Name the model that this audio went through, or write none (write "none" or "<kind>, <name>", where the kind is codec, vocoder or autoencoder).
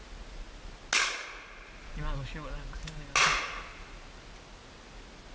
none